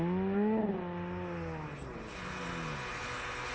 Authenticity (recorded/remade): recorded